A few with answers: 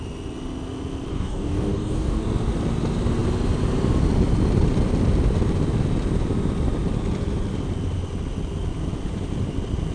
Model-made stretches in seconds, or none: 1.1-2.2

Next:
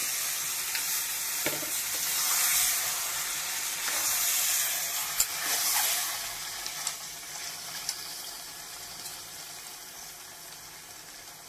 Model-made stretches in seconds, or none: none

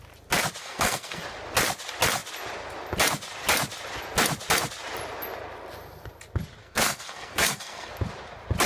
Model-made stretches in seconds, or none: 0.6-1.2; 6.6-7.9

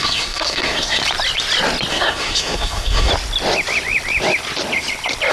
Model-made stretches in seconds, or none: 0.0-1.0; 1.9-3.1

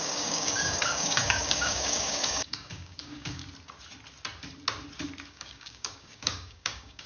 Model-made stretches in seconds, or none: 0.0-3.4; 5.3-7.1

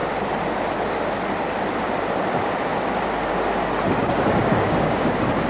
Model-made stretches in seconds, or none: 4.0-5.1

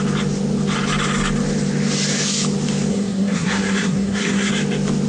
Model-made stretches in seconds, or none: 2.9-4.5